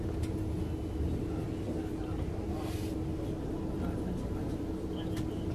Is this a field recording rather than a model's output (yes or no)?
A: yes